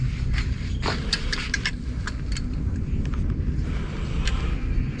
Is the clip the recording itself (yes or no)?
yes